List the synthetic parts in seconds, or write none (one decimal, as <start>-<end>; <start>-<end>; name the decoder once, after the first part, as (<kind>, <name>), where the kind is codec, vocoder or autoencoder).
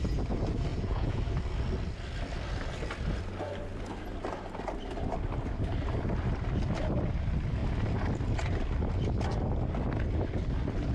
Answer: 0.7-1.2 (vocoder, Vocos)